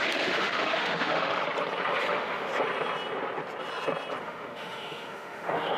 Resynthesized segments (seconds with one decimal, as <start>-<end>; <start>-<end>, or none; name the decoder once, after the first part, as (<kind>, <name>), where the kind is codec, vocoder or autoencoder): 0.0-1.4 (autoencoder, DAC-VAE); 2.0-2.5; 4.2-5.8